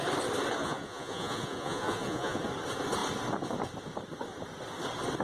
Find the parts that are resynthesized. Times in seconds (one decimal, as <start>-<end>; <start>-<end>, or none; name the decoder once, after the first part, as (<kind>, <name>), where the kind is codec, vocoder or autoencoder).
0.6-2.4 (vocoder, Vocos)